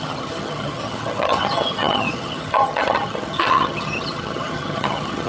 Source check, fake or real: fake